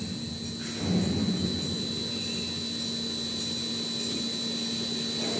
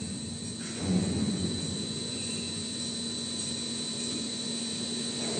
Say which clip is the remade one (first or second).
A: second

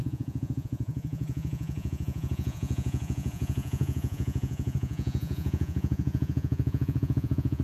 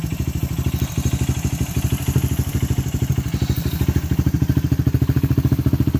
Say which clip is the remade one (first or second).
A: first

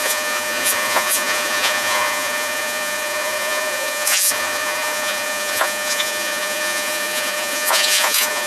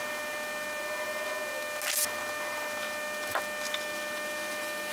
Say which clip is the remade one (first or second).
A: first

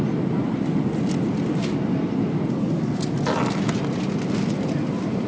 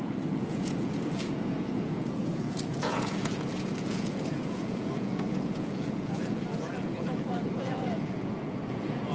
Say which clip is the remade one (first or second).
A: second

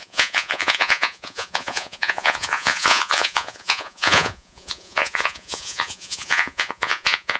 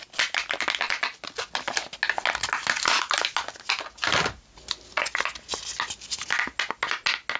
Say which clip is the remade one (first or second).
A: first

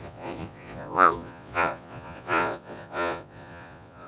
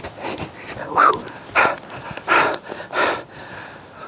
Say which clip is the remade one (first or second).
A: first